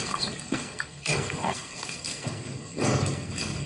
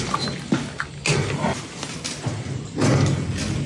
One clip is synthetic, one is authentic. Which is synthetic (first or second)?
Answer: first